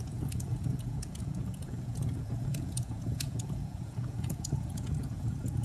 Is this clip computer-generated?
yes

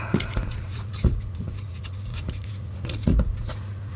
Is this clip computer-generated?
yes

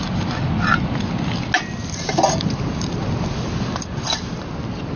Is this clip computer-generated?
no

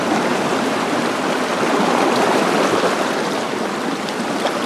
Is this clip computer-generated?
no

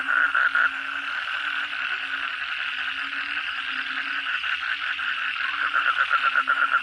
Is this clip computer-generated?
no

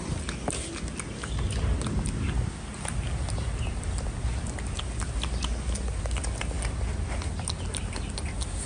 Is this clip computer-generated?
no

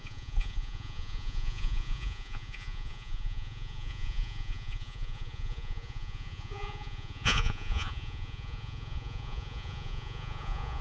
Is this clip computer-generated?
yes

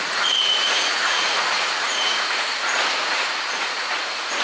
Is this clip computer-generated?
yes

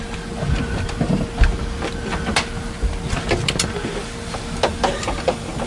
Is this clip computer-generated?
no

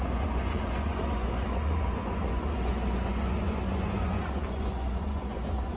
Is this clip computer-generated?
yes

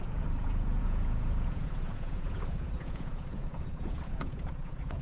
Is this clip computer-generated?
yes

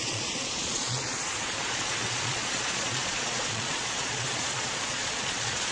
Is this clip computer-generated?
yes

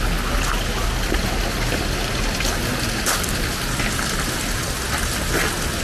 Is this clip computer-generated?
no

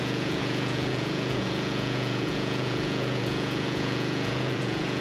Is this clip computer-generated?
yes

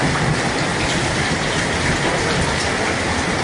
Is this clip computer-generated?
no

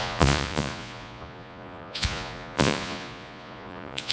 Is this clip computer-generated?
yes